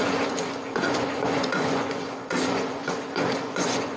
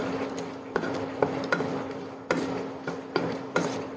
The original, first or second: second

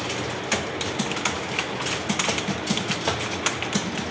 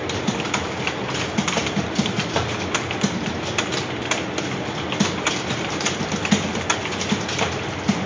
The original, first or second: first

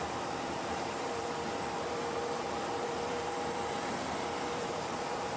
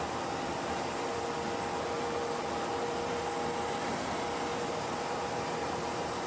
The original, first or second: second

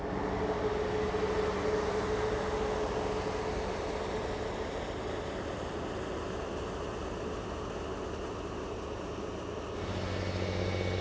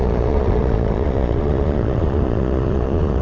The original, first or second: first